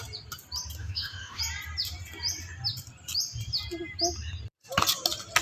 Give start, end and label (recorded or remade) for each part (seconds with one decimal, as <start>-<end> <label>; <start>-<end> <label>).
0.0-0.8 recorded; 0.8-1.4 remade; 1.4-5.4 recorded